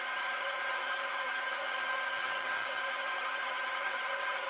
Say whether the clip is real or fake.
fake